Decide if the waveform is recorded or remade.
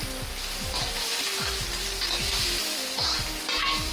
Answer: recorded